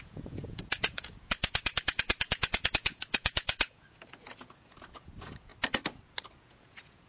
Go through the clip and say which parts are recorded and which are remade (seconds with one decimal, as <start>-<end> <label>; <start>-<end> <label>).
0.0-5.5 remade; 5.5-6.4 recorded; 6.4-7.1 remade

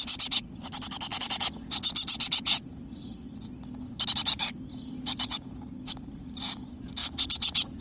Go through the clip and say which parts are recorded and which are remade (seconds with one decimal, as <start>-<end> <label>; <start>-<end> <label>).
0.0-1.1 recorded; 1.1-2.8 remade; 2.8-7.0 recorded; 7.0-7.8 remade

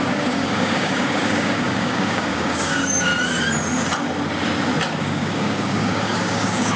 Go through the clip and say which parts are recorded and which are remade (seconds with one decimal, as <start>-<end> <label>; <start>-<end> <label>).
0.0-3.1 remade; 3.1-5.0 recorded; 5.0-6.8 remade